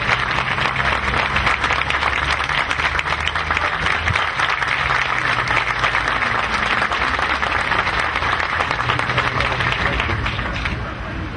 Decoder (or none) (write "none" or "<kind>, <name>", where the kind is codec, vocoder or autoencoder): none